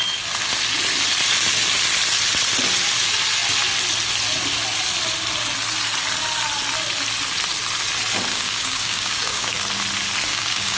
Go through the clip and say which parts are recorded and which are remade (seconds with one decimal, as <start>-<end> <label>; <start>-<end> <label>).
0.0-8.3 recorded; 8.3-9.6 remade; 9.6-10.3 recorded; 10.3-10.8 remade